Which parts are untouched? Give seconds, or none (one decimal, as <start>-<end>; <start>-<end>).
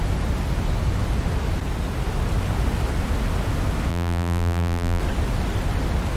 0.0-3.9; 5.0-6.2